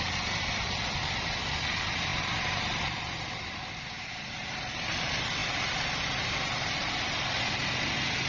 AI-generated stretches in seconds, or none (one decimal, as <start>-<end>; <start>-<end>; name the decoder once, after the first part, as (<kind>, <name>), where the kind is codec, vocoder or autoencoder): none